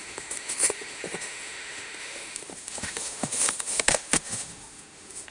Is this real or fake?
fake